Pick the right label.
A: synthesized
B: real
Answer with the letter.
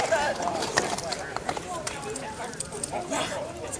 A